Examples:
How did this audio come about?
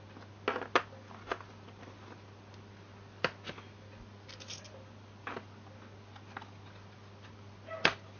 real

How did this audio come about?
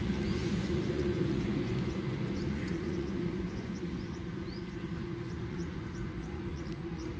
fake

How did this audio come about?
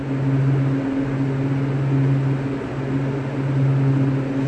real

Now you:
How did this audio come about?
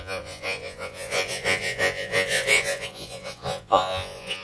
fake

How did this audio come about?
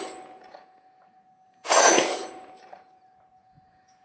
fake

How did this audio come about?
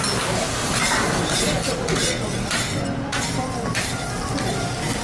real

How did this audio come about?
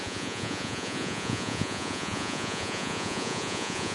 fake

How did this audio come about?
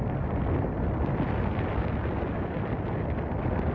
real